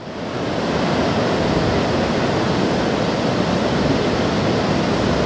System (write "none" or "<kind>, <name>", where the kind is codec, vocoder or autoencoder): none